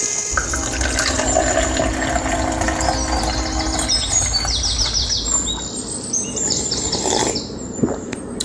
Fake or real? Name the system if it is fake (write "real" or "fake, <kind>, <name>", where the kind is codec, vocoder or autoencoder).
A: real